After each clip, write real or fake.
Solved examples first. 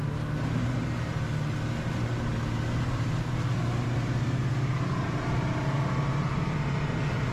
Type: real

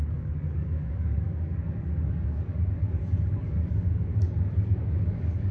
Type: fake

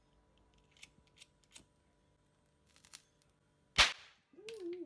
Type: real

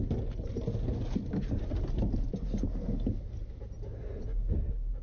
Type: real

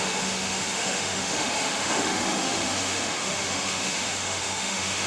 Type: fake